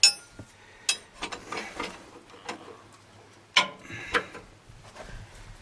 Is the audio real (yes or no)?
yes